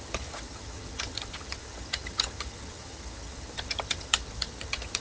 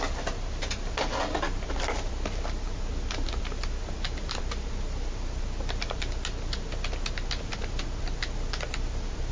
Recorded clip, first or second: second